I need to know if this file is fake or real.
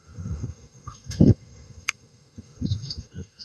fake